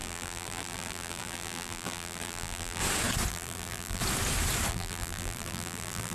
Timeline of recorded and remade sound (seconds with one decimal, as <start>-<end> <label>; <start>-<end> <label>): 0.0-2.8 remade; 2.8-3.3 recorded; 3.3-4.0 remade; 4.0-4.7 recorded; 4.7-6.1 remade